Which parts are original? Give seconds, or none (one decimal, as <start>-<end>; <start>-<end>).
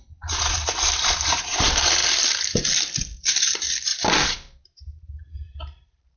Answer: 2.0-3.2